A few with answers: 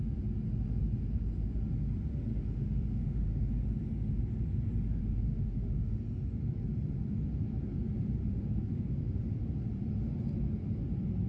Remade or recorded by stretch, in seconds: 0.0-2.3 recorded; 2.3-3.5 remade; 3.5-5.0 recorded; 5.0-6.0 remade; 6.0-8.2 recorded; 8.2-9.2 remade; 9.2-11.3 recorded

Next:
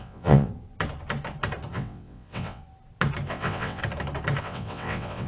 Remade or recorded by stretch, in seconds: 0.0-0.5 remade; 0.5-1.7 recorded; 1.7-2.6 remade; 2.6-3.3 recorded; 3.3-3.8 remade; 3.8-4.4 recorded; 4.4-5.3 remade

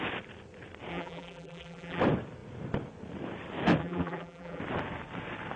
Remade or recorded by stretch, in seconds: 0.0-0.9 recorded; 0.9-2.0 remade; 2.0-3.8 recorded; 3.8-4.6 remade; 4.6-5.6 recorded

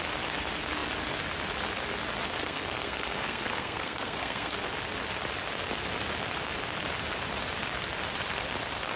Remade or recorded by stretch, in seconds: 0.0-2.4 recorded; 2.4-4.5 remade; 4.5-9.0 recorded

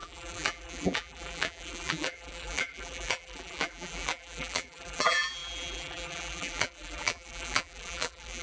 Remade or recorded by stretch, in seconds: 0.0-8.4 remade

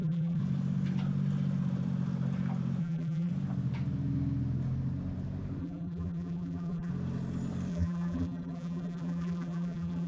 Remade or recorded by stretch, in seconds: 0.0-0.4 remade; 0.4-2.8 recorded; 2.8-3.3 remade; 3.3-5.6 recorded; 5.6-6.9 remade; 6.9-7.7 recorded; 7.7-10.1 remade